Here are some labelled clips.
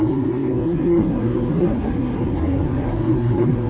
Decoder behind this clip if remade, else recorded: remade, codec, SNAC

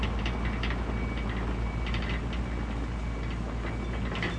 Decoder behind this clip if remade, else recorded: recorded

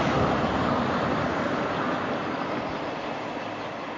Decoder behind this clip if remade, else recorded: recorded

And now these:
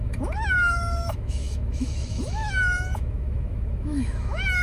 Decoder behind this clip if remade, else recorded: remade, autoencoder, DAC-VAE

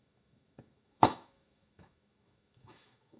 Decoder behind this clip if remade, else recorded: remade, autoencoder, DAC-VAE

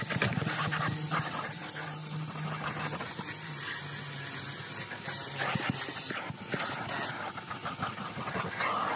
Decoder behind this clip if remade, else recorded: recorded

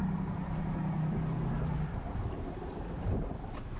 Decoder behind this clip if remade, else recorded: recorded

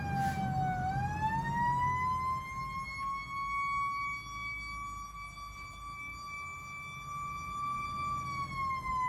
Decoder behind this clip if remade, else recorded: recorded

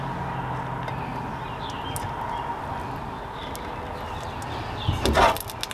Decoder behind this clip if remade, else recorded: recorded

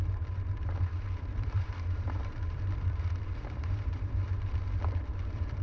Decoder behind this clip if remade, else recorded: remade, vocoder, BigVGAN v2